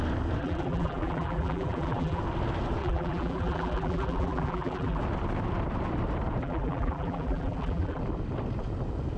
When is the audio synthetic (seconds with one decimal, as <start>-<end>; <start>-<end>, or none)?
0.4-2.2; 2.8-5.0; 6.4-8.0